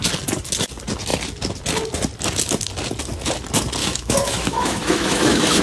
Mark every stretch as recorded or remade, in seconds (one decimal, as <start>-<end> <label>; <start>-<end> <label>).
0.0-3.8 recorded; 3.8-5.6 remade